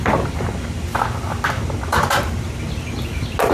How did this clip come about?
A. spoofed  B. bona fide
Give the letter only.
B